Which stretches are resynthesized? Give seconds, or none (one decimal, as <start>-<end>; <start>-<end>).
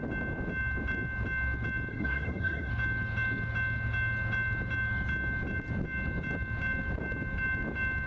1.9-2.7